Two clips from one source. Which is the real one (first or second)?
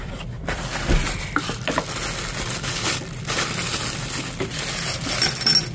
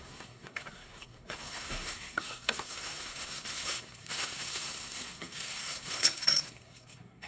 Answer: first